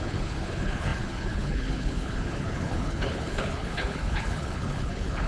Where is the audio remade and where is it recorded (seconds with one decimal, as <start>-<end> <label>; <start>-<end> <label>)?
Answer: 0.0-5.3 remade